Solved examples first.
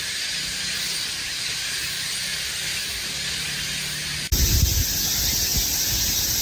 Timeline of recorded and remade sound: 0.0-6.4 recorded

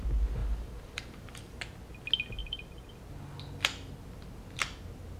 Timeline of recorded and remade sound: 0.0-0.4 recorded; 0.4-1.6 remade; 1.6-2.4 recorded; 2.4-2.9 remade; 2.9-5.2 recorded

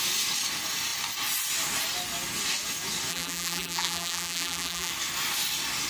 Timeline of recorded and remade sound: 0.0-3.1 recorded; 3.1-4.9 remade; 4.9-5.9 recorded

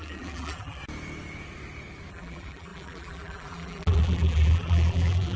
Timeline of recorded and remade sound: 0.0-0.8 remade; 0.8-2.1 recorded; 2.1-5.4 remade

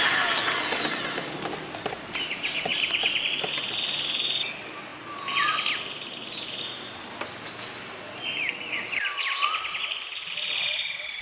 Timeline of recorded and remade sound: 0.0-11.2 recorded

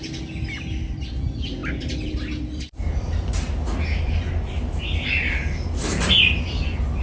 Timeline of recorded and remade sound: 0.0-7.0 recorded

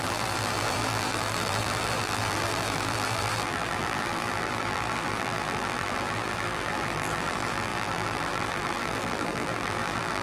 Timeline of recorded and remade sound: 0.0-10.2 remade